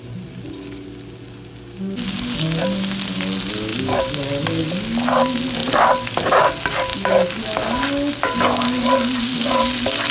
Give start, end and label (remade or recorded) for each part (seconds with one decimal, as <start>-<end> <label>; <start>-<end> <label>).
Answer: 0.0-10.1 recorded